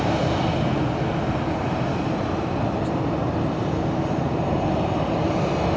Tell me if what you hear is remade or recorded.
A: recorded